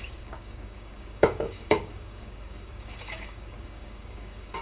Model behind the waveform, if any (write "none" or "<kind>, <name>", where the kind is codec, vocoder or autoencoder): codec, DAC